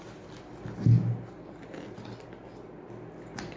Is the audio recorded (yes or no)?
yes